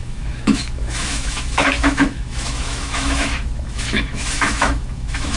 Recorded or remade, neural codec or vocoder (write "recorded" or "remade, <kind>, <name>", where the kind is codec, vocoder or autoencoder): remade, autoencoder, DAC-VAE